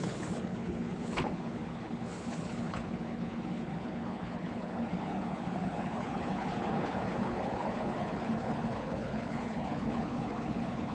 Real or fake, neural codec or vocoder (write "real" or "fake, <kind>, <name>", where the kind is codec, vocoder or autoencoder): fake, codec, HILCodec